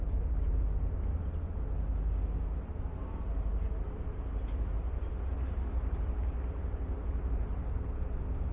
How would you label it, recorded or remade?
recorded